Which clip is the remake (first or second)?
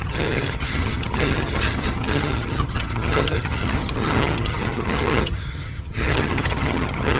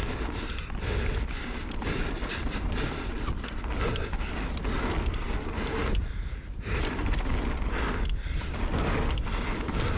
first